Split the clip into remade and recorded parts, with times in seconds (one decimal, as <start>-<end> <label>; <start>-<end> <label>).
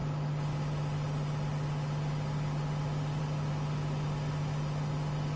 0.0-5.4 recorded